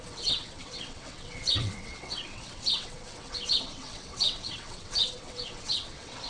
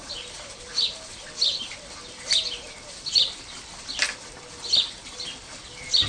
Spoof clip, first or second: first